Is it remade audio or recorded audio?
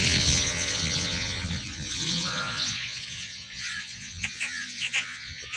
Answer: remade